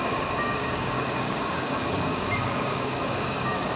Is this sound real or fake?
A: fake